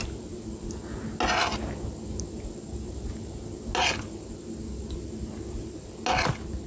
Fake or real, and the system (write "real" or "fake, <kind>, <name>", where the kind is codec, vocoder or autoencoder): real